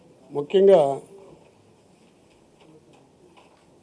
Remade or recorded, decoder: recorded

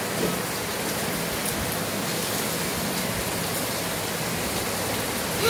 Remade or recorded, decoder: recorded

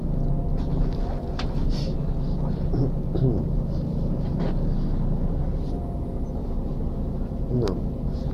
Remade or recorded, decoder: recorded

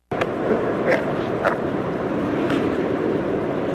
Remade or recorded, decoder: remade, vocoder, BigVGAN v2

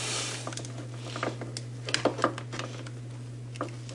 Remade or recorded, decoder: recorded